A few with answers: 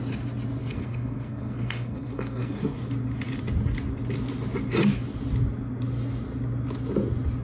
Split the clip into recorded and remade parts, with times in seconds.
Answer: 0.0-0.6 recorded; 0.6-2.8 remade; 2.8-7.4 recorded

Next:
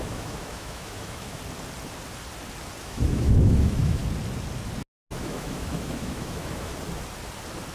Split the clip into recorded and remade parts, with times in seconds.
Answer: 0.0-1.4 remade; 1.4-2.8 recorded; 2.8-4.0 remade; 4.0-5.2 recorded; 5.2-6.7 remade; 6.7-7.7 recorded

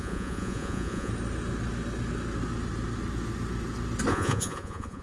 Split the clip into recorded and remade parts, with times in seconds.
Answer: 0.0-1.1 remade; 1.1-4.1 recorded; 4.1-5.0 remade

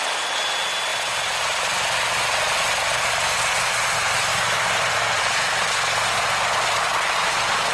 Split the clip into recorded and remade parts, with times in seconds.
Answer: 0.0-7.7 recorded

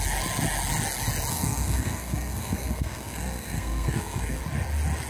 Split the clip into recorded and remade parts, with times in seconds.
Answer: 0.0-1.3 recorded; 1.3-4.4 remade; 4.4-5.1 recorded

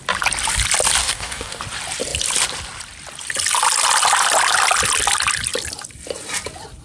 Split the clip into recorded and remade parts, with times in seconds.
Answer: 0.0-1.0 recorded; 1.0-1.6 remade; 1.6-6.8 recorded

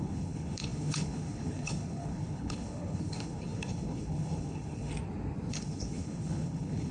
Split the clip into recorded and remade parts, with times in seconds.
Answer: 0.0-4.9 remade; 4.9-5.5 recorded; 5.5-6.9 remade